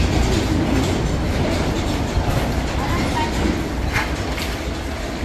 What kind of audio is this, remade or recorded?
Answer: recorded